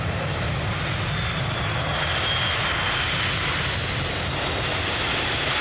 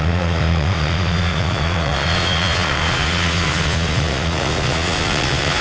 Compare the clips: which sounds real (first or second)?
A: first